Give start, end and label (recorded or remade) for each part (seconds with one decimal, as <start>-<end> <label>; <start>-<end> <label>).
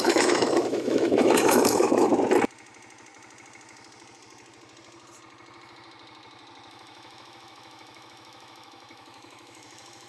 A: 0.0-2.1 remade; 2.1-6.7 recorded; 6.7-10.1 remade